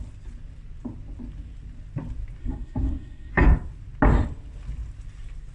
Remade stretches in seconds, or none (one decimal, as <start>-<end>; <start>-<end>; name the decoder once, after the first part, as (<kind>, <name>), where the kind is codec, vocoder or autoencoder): 2.4-3.3 (codec, SNAC)